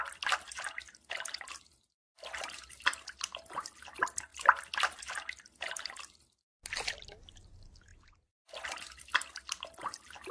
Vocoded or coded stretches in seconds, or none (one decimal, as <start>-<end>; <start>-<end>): none